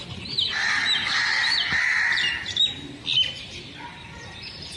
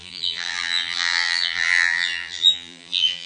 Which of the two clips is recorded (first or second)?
first